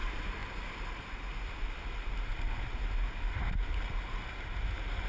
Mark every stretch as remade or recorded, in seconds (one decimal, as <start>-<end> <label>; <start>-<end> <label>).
0.0-5.1 recorded